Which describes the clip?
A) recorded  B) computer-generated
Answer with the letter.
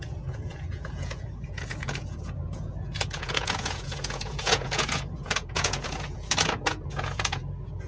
B